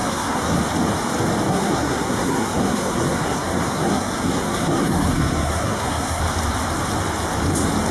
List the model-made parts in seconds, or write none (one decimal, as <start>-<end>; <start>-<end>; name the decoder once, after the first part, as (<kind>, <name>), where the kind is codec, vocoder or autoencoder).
0.0-0.6 (codec, SNAC); 1.5-6.2